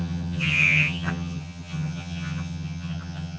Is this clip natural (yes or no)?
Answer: no